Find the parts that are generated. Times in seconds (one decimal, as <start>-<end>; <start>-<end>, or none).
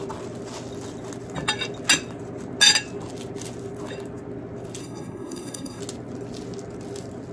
4.8-5.8